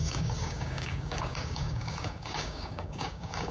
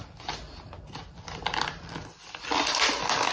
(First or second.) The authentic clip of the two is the second